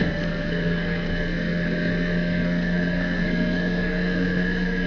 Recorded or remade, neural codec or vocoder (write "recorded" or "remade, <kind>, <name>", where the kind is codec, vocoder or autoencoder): remade, codec, SNAC